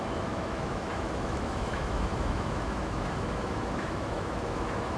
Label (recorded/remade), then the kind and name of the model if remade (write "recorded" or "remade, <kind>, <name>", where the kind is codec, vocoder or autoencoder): remade, autoencoder, DAC-VAE